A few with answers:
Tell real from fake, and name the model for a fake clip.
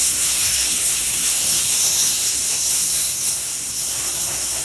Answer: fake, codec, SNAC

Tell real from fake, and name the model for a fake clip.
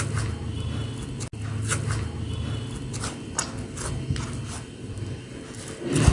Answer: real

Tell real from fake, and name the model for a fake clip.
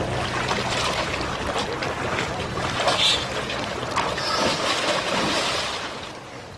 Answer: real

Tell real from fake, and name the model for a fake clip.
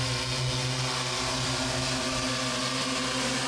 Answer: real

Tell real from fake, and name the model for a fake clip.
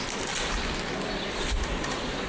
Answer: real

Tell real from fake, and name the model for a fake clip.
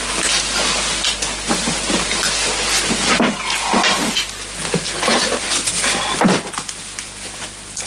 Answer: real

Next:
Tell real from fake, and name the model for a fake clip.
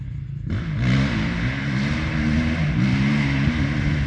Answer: real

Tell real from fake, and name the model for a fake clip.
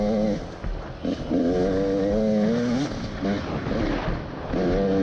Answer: real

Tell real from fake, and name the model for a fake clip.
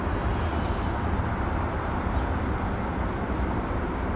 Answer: real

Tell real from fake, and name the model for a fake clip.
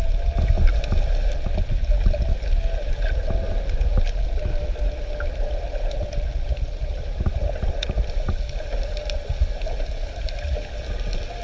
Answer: real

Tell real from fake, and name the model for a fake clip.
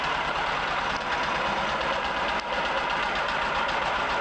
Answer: real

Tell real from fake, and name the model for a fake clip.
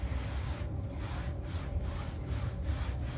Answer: real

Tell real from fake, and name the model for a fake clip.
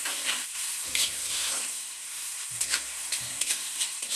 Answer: fake, codec, SNAC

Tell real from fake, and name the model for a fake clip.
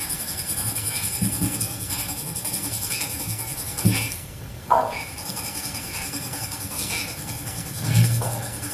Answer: fake, codec, SNAC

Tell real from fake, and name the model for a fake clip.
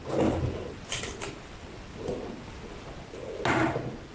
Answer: real